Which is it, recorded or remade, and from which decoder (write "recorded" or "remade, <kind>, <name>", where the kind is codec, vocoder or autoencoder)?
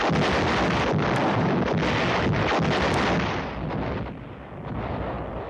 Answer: recorded